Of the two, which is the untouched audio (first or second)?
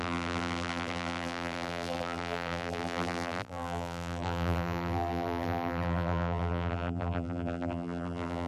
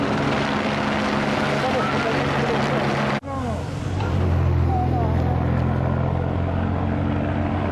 second